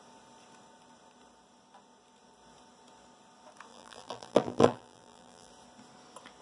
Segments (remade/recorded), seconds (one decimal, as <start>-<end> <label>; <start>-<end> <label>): 0.0-3.7 recorded; 3.7-5.5 remade; 5.5-6.4 recorded